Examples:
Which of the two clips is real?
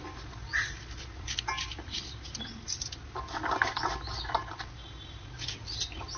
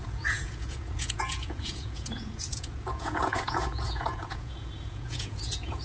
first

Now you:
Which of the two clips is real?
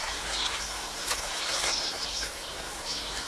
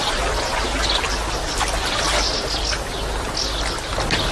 second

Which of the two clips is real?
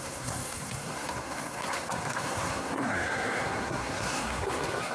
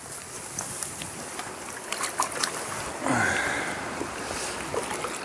second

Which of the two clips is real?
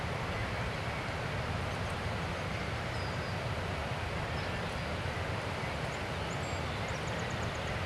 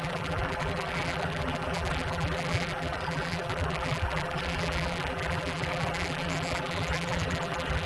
first